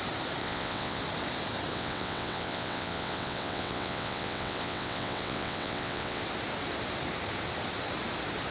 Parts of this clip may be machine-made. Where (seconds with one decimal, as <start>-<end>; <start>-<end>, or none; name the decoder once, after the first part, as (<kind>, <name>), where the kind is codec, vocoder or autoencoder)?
0.4-1.0 (vocoder, WaveNeXt); 1.7-6.2